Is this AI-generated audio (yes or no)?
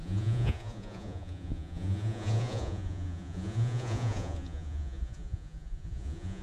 yes